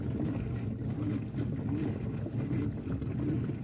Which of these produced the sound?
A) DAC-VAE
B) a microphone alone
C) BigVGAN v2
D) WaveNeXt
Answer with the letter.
B